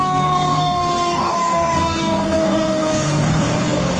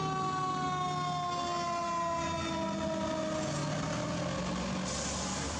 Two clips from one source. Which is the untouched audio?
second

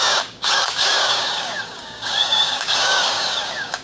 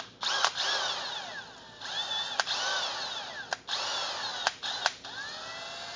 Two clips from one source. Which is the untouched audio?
second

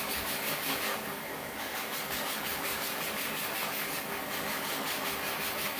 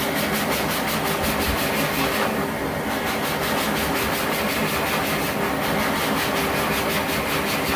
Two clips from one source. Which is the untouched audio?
second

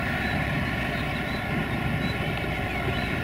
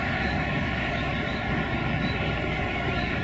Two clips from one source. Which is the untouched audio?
first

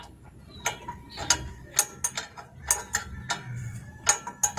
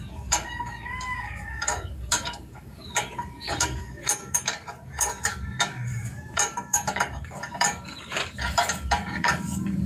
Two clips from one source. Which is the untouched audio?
first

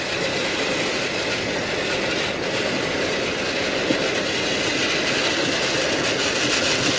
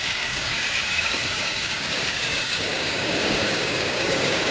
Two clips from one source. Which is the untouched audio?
first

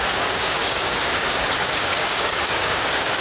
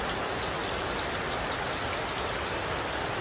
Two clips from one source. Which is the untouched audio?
second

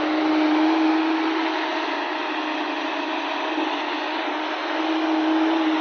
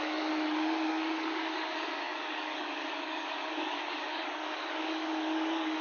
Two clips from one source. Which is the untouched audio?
first